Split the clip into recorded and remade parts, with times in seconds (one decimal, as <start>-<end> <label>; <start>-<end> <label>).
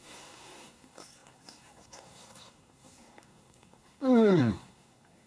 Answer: 0.0-5.3 remade